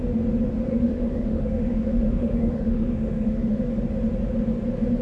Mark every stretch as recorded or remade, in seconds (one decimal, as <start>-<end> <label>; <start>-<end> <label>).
0.0-0.7 recorded; 0.7-3.7 remade; 3.7-5.0 recorded